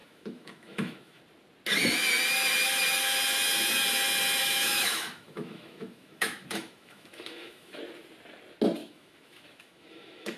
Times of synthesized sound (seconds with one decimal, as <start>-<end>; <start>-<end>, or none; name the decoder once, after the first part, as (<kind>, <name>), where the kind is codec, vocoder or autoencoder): 0.0-1.2 (autoencoder, DAC-VAE); 4.4-7.8; 8.8-10.4